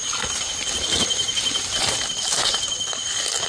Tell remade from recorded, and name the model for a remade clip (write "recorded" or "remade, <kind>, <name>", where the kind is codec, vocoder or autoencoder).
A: recorded